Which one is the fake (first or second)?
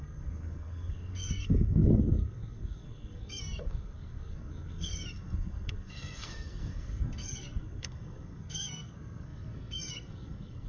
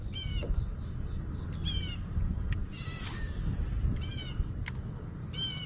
first